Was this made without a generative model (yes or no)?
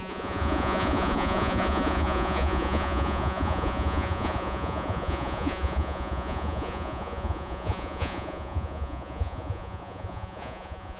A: no